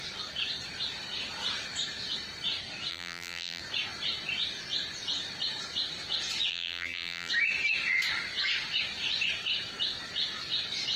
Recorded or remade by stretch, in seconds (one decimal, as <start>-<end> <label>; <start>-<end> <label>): 0.0-2.9 recorded; 2.9-3.6 remade; 3.6-6.5 recorded; 6.5-7.3 remade; 7.3-11.0 recorded

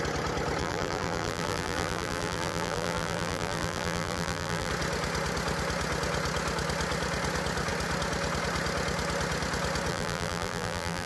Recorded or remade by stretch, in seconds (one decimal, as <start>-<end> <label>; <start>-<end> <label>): 0.0-0.6 recorded; 0.6-4.7 remade; 4.7-9.9 recorded; 9.9-11.1 remade

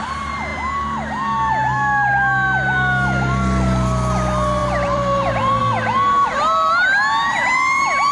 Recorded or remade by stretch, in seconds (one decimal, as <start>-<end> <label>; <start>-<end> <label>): 0.0-4.6 recorded; 4.6-5.6 remade; 5.6-8.1 recorded

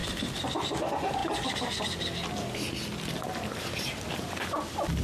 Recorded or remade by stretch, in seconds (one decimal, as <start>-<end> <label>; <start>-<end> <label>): 0.0-1.2 remade; 1.2-4.2 recorded; 4.2-5.0 remade

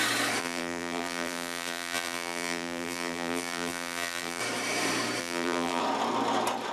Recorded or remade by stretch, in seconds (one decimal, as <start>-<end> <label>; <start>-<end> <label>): 0.0-0.4 recorded; 0.4-4.4 remade; 4.4-5.2 recorded; 5.2-5.8 remade; 5.8-6.7 recorded

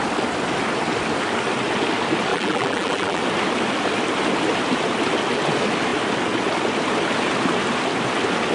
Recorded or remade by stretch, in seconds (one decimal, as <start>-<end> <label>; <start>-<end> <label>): 0.0-2.3 recorded; 2.3-3.2 remade; 3.2-8.5 recorded

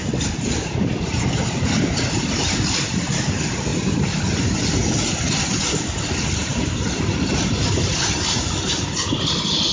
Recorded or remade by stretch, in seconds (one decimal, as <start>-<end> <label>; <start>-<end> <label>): 0.0-3.7 recorded; 3.7-4.4 remade; 4.4-6.4 recorded; 6.4-8.8 remade; 8.8-9.7 recorded

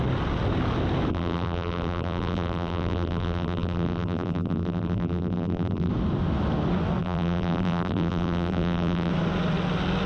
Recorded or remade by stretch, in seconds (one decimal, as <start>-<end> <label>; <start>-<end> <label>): 0.0-1.1 recorded; 1.1-5.9 remade; 5.9-7.0 recorded; 7.0-9.1 remade; 9.1-10.1 recorded